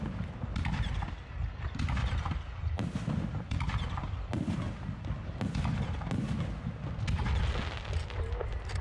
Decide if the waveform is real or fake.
real